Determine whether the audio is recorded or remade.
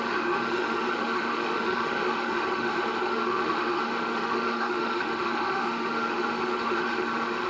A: remade